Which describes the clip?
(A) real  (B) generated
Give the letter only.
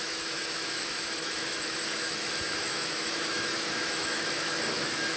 B